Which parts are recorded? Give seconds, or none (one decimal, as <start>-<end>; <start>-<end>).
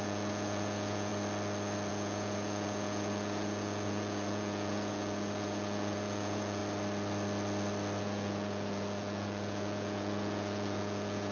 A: 1.1-1.9; 6.6-8.0